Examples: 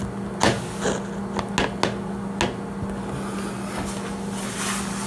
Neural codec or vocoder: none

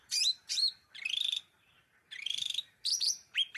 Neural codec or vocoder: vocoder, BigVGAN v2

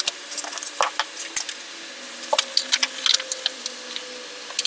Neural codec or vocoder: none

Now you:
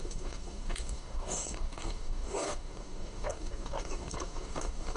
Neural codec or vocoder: codec, DAC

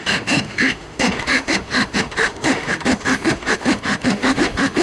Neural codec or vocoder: autoencoder, DAC-VAE